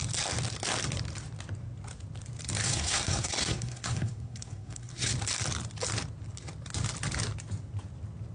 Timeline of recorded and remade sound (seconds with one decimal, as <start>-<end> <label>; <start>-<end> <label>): 0.0-2.6 recorded; 2.6-5.1 remade; 5.1-8.3 recorded